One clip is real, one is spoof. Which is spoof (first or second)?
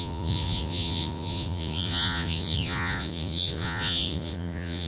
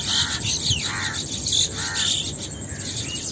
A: first